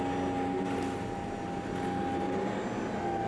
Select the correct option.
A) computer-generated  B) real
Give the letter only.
B